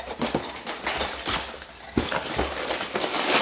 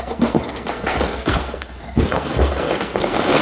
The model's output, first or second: second